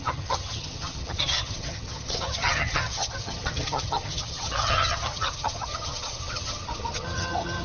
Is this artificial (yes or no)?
yes